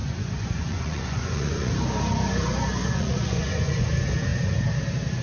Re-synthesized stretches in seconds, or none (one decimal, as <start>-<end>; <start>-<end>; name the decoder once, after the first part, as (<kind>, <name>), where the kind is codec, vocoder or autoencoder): 0.0-1.7 (vocoder, Vocos); 2.8-3.9